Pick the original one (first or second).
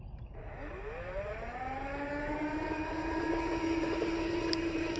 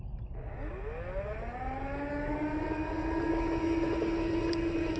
second